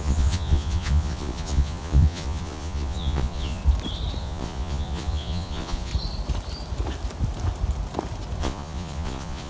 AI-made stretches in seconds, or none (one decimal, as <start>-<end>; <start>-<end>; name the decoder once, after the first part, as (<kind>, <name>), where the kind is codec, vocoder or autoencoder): 0.0-3.6 (vocoder, Vocos); 4.2-5.9; 8.4-9.5